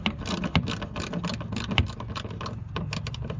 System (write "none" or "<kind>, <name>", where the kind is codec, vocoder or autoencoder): none